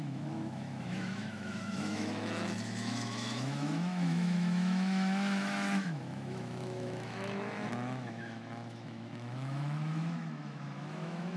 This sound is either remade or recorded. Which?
remade